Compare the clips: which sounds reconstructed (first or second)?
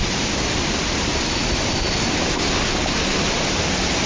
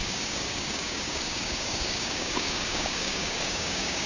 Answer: second